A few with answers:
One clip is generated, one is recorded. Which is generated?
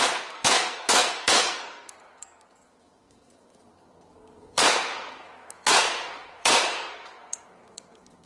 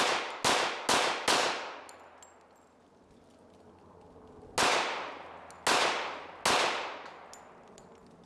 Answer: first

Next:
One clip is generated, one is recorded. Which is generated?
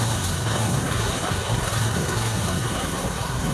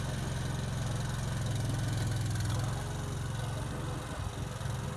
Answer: first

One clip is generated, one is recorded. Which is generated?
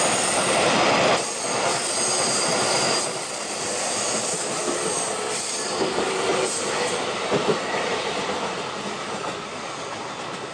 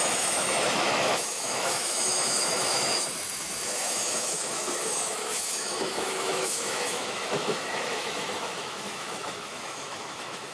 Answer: second